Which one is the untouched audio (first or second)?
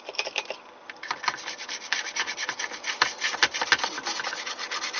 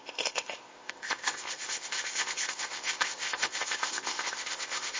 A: first